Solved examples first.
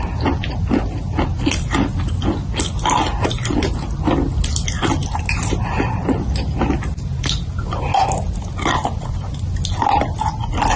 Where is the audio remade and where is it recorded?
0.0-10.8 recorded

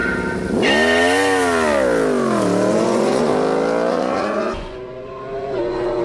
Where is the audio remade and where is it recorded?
0.0-2.7 recorded; 2.7-3.3 remade; 3.3-3.9 recorded; 3.9-6.0 remade

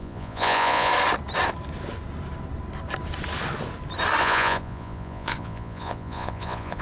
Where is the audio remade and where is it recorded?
0.0-0.9 remade; 0.9-4.2 recorded; 4.2-6.8 remade